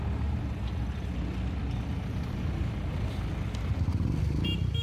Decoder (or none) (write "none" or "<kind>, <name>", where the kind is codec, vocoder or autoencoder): none